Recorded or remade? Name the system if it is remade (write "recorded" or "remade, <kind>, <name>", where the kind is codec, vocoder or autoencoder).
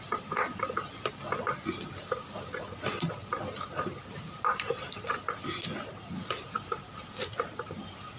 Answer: recorded